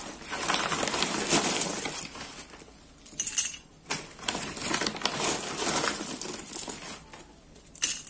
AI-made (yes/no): no